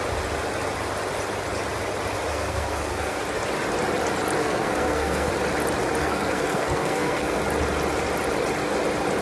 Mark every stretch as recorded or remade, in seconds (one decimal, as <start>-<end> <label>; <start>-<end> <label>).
0.0-2.3 recorded; 2.3-3.2 remade; 3.2-4.4 recorded; 4.4-5.3 remade; 5.3-6.0 recorded; 6.0-7.4 remade; 7.4-9.2 recorded